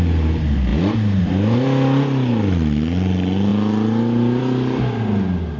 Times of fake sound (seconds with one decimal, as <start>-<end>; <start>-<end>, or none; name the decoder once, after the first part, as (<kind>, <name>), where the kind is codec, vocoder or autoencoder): none